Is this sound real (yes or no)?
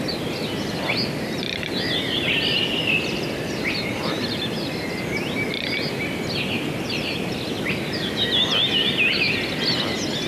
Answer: yes